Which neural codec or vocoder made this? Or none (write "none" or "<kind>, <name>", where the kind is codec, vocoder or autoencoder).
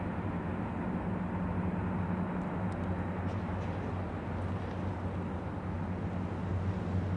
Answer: none